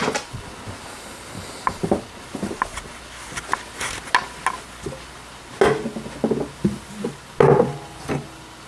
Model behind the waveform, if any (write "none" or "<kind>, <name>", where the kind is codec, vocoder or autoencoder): none